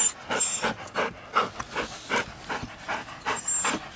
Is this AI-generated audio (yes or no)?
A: no